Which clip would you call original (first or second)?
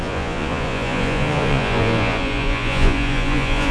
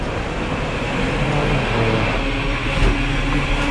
second